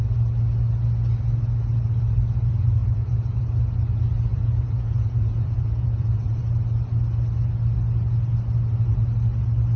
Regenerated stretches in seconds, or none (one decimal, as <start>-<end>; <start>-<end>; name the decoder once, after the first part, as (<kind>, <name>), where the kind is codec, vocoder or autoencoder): 2.8-3.4 (vocoder, Vocos); 4.3-6.4